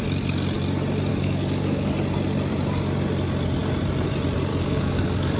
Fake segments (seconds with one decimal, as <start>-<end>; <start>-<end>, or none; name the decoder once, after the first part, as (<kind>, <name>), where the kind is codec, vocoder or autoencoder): 1.1-1.9 (codec, DAC); 4.5-5.4